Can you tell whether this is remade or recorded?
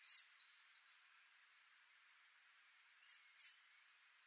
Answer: recorded